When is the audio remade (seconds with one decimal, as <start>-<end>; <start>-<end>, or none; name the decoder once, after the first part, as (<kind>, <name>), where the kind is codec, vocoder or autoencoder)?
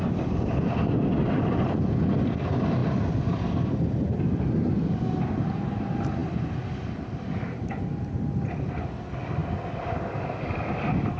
0.0-9.4 (vocoder, BigVGAN v2); 10.7-11.2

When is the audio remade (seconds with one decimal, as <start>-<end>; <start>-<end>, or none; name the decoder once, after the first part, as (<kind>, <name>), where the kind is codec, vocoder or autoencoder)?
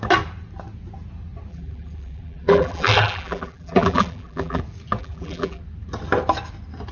1.5-4.6 (vocoder, BigVGAN v2); 5.0-5.6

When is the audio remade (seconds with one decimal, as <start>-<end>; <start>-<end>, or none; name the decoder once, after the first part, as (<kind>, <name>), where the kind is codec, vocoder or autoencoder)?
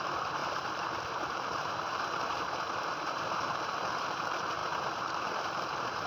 0.0-4.6 (vocoder, BigVGAN v2); 5.2-6.1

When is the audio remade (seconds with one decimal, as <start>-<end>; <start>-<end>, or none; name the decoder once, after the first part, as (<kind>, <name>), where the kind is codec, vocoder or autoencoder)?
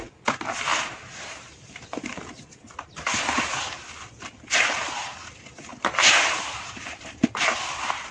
5.7-7.4 (vocoder, BigVGAN v2)